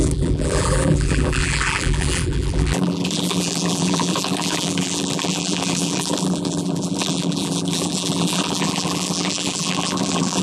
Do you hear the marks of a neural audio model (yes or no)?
yes